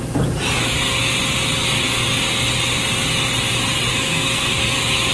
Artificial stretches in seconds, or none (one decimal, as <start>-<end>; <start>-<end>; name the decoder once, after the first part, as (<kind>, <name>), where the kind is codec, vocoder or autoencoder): 3.9-4.6 (codec, SNAC)